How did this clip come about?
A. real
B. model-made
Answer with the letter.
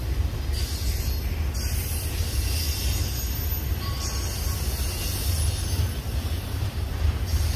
A